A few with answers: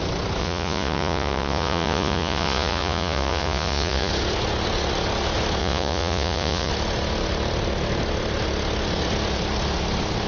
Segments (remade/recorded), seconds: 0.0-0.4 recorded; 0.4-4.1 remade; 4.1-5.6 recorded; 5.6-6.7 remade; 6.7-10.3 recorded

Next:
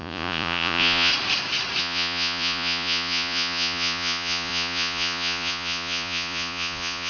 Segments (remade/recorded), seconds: 0.0-1.1 remade; 1.1-1.8 recorded; 1.8-7.1 remade

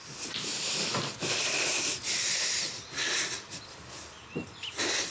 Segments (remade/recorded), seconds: 0.0-5.1 recorded

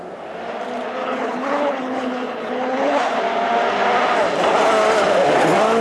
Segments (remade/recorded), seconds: 0.0-1.0 recorded; 1.0-3.2 remade; 3.2-5.8 recorded

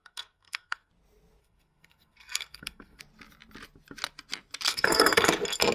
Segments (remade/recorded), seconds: 0.0-0.9 remade; 0.9-1.4 recorded; 1.4-3.0 remade; 3.0-4.7 recorded; 4.7-5.3 remade; 5.3-5.7 recorded